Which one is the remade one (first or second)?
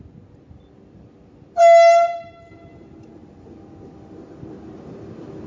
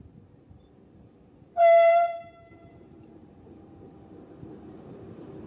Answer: second